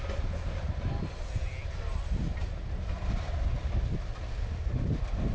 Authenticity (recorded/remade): recorded